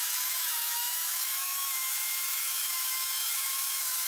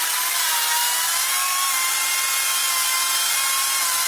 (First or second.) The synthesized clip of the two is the first